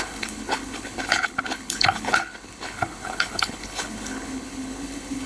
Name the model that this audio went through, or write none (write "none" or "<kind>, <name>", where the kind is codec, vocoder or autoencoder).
codec, HILCodec